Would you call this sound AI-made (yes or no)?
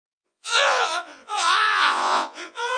yes